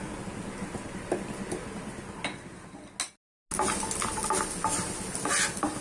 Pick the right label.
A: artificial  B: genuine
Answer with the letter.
B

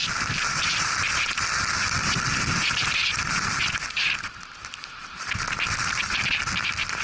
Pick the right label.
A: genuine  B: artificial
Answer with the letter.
A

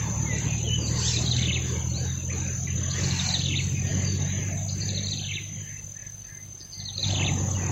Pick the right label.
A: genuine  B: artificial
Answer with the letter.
A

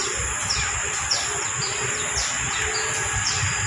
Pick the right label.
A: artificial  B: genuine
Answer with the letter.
B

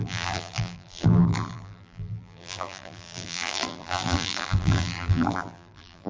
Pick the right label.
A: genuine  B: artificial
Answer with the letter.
B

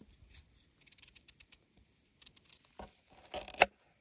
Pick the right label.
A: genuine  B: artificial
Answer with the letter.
A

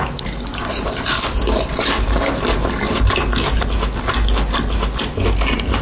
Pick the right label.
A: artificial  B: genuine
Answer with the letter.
B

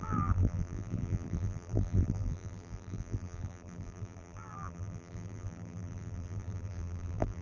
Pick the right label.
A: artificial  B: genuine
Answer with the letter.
A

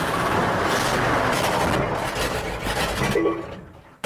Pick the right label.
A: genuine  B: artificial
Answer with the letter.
A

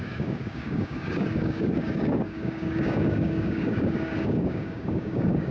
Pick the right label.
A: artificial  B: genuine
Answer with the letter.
A